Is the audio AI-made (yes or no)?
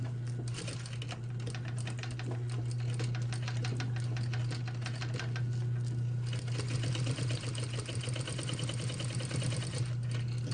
no